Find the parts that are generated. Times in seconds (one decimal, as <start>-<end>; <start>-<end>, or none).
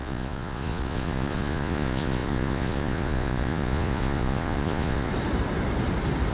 0.0-5.1